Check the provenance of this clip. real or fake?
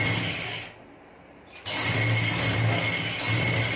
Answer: real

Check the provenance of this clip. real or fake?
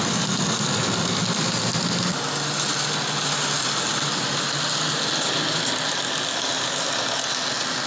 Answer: real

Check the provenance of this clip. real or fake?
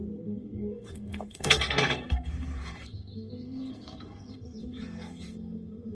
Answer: fake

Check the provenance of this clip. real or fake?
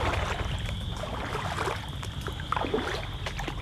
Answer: real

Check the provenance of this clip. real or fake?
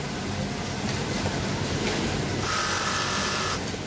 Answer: real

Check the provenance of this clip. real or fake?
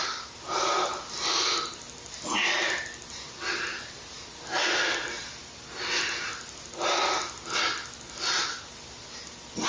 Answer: real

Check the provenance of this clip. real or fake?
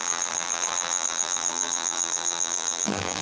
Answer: fake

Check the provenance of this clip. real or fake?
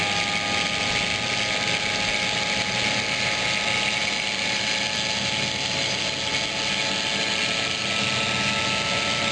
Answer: real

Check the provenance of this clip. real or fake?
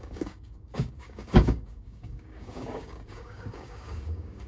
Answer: fake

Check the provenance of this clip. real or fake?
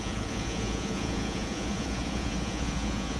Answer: fake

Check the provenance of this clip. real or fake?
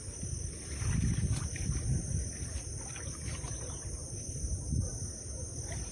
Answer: real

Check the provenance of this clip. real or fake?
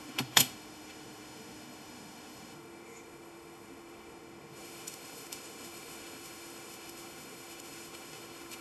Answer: fake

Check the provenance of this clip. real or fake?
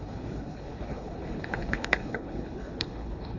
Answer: fake